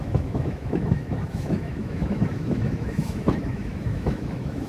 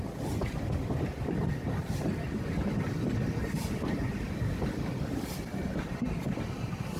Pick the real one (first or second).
second